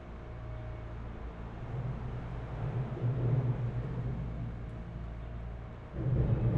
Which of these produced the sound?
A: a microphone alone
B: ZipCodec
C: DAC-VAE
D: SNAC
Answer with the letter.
A